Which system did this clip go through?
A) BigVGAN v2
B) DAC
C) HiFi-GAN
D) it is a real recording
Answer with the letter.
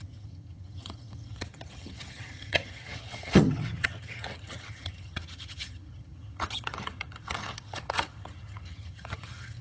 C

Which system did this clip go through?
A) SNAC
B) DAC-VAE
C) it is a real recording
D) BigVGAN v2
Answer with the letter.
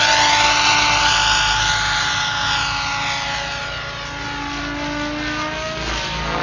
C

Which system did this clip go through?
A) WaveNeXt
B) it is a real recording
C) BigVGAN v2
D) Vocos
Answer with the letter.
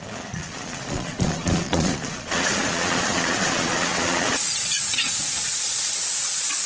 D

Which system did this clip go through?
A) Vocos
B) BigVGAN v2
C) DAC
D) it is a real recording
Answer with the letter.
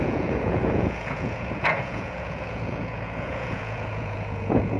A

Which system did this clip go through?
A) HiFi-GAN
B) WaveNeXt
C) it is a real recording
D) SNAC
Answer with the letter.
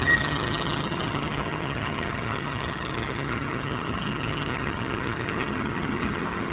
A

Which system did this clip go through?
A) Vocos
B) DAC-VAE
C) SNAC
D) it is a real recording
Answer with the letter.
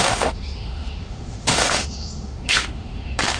B